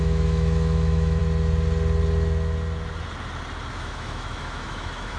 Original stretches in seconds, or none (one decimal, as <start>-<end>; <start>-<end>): 1.2-3.7